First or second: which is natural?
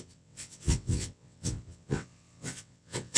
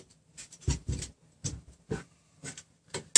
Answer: second